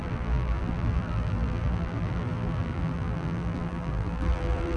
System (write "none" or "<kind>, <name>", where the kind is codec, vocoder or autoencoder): vocoder, BigVGAN v2